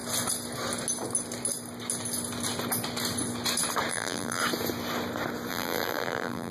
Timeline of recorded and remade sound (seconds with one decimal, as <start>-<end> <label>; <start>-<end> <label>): 0.0-3.9 recorded; 3.9-4.4 remade; 4.4-5.5 recorded; 5.5-6.5 remade